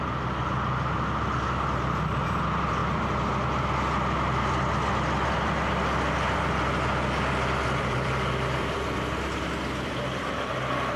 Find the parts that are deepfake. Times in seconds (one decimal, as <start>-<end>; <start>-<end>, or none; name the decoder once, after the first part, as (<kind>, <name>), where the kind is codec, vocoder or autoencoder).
0.0-2.8 (vocoder, BigVGAN v2); 7.8-11.0